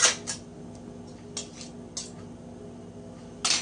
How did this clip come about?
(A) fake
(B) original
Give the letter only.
B